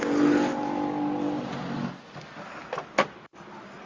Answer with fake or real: real